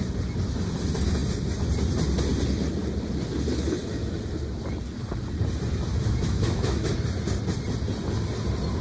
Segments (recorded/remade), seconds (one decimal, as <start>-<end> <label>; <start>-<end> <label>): 0.0-5.9 recorded; 5.9-6.9 remade; 6.9-8.8 recorded